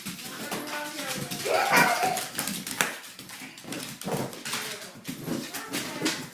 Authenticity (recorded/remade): recorded